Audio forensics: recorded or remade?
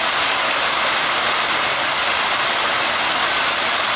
recorded